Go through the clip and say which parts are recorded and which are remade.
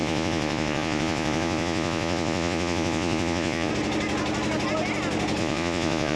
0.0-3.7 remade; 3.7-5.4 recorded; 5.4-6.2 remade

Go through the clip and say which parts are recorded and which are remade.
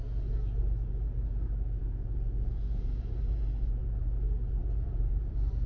0.0-1.8 recorded; 1.8-4.0 remade; 4.0-4.6 recorded; 4.6-5.3 remade; 5.3-5.7 recorded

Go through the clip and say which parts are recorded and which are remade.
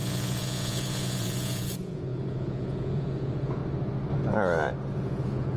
0.0-3.6 remade; 3.6-4.9 recorded; 4.9-5.6 remade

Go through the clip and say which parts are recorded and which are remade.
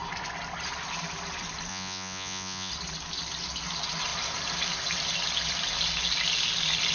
0.0-1.7 recorded; 1.7-2.7 remade; 2.7-6.9 recorded